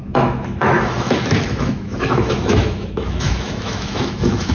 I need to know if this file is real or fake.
fake